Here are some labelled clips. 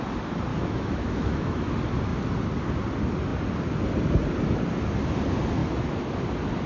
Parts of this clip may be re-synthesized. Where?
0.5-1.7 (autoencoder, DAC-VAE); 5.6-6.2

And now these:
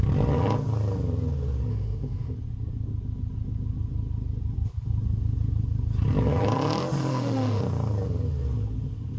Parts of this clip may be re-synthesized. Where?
1.7-2.3 (autoencoder, DAC-VAE); 7.1-7.6

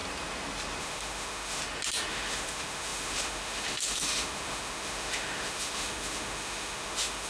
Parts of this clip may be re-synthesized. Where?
0.8-1.6 (autoencoder, DAC-VAE); 2.1-7.3

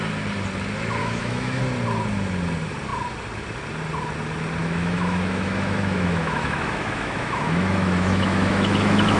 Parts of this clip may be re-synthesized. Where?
1.0-1.6 (autoencoder, DAC-VAE); 4.6-9.2

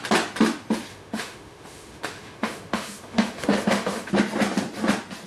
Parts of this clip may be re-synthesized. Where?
0.9-4.1 (autoencoder, DAC-VAE)

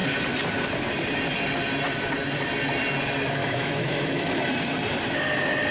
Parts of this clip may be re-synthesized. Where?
3.4-4.3 (autoencoder, DAC-VAE)

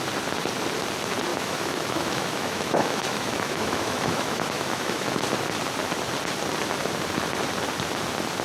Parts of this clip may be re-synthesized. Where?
1.3-5.1 (autoencoder, DAC-VAE)